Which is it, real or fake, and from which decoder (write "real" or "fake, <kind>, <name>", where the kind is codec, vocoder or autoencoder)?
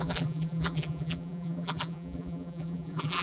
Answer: fake, vocoder, BigVGAN v2